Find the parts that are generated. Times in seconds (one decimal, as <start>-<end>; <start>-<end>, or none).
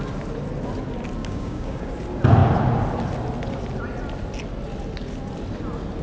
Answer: 1.2-1.9